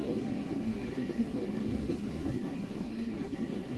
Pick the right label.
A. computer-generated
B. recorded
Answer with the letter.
A